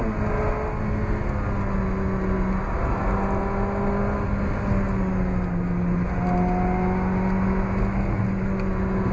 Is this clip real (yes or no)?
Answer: yes